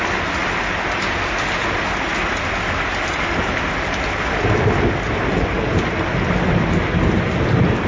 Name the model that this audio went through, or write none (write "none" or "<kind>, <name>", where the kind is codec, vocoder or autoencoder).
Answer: none